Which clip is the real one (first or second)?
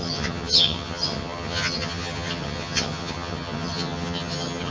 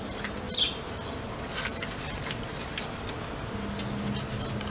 second